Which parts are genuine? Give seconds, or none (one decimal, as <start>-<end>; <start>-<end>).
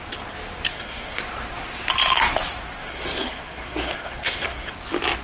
0.0-0.7; 1.2-2.8; 4.7-5.2